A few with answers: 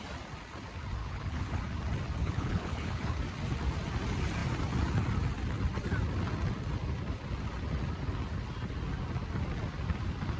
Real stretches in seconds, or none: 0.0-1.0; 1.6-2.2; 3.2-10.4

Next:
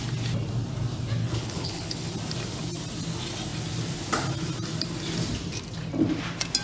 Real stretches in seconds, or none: 0.0-1.2; 2.1-6.6

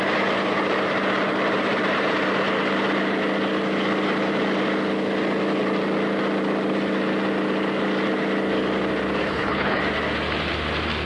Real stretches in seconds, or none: 0.0-9.2; 9.8-11.1

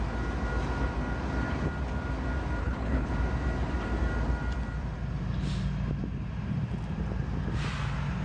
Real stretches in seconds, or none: 0.0-2.6; 3.1-8.2